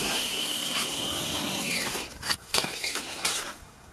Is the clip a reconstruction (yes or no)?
yes